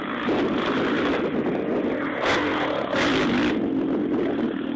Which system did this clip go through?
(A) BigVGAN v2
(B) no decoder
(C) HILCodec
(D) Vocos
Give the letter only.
B